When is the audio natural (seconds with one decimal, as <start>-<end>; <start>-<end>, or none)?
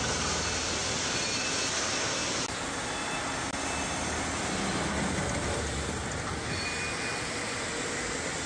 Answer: 0.0-8.5